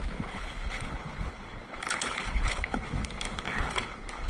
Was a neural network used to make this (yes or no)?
yes